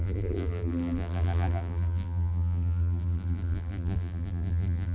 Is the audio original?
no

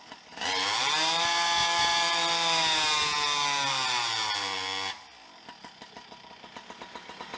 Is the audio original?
yes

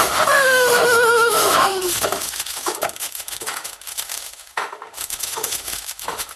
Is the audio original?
no